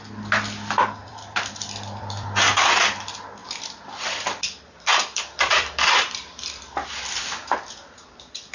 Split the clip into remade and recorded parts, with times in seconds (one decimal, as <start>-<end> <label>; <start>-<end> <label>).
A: 0.0-1.0 recorded; 1.0-2.5 remade; 2.5-3.4 recorded; 3.4-6.9 remade; 6.9-8.5 recorded